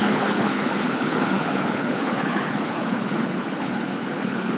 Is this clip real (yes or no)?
no